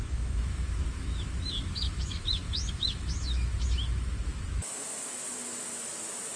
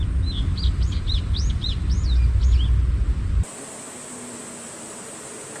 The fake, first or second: first